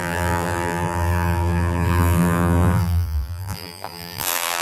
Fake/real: fake